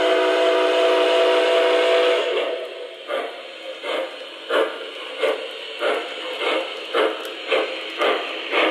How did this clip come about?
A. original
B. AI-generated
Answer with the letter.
A